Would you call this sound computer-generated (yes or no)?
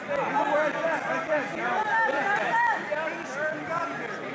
no